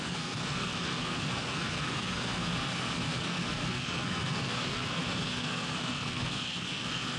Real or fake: fake